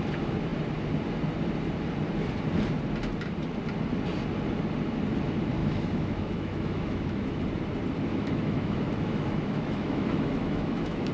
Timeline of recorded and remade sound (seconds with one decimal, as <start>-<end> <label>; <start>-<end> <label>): 0.0-5.6 recorded; 5.6-7.4 remade; 7.4-8.1 recorded; 8.1-11.1 remade